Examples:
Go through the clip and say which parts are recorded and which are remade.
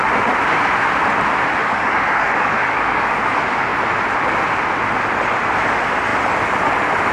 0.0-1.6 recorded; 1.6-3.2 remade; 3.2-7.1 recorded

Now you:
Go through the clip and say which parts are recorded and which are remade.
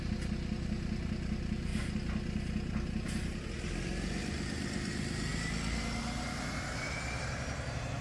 0.0-8.0 recorded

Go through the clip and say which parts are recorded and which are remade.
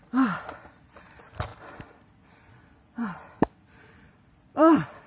0.0-5.1 recorded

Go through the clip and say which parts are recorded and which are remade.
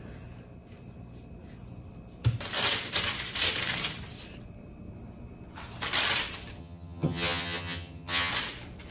0.0-6.6 recorded; 6.6-8.3 remade; 8.3-8.9 recorded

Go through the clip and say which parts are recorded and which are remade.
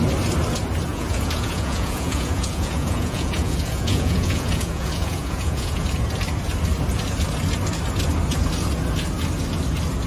0.0-0.9 recorded; 0.9-5.8 remade; 5.8-10.1 recorded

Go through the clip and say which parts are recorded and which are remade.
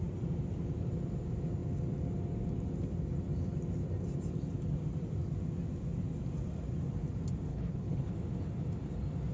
0.0-7.5 recorded; 7.5-8.1 remade; 8.1-9.3 recorded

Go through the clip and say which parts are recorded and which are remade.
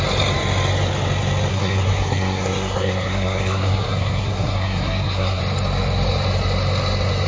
0.0-1.5 recorded; 1.5-5.4 remade; 5.4-7.3 recorded